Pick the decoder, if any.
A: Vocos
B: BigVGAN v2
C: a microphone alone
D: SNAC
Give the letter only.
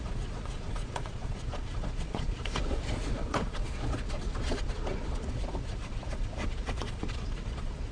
A